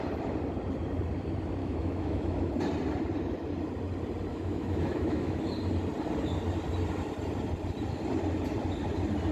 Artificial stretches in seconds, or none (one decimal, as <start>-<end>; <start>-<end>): 1.6-2.5; 4.3-5.4